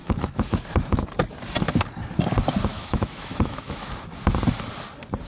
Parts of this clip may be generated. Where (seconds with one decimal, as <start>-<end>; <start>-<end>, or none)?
0.0-1.1; 2.7-3.9